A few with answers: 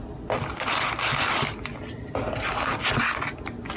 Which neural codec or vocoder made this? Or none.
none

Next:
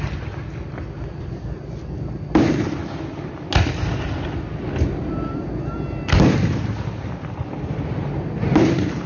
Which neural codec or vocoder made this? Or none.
none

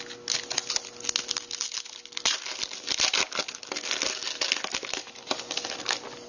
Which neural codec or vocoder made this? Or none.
none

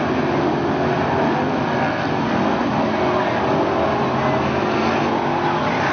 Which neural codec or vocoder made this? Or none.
none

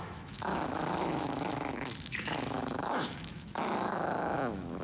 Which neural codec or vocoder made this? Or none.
autoencoder, DAC-VAE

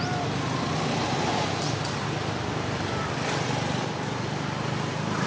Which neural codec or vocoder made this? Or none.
none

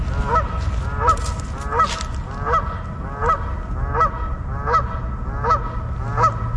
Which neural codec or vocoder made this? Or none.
none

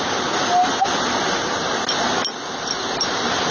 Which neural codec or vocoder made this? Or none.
none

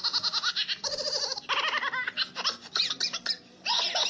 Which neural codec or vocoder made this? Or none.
none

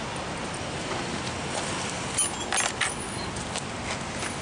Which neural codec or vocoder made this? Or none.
none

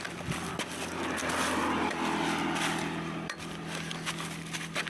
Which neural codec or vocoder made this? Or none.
none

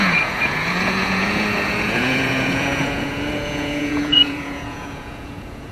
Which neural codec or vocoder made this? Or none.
vocoder, Vocos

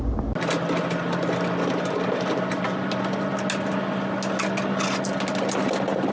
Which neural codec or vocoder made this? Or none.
none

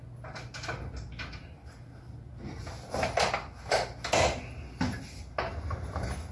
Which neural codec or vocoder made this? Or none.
none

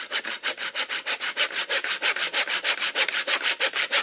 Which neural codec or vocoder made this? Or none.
none